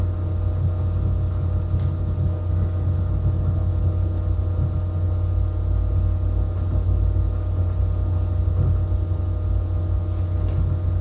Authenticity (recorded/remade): recorded